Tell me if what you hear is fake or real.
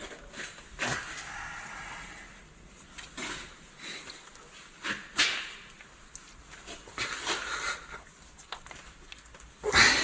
real